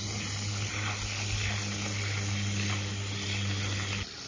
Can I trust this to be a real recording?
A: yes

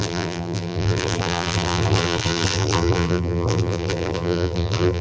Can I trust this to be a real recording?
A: no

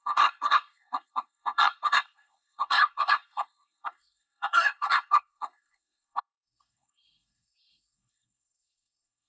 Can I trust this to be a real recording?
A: no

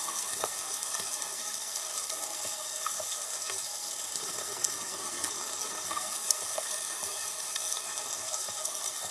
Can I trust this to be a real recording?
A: no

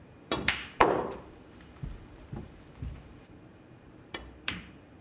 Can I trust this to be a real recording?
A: no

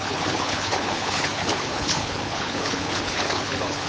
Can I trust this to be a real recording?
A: no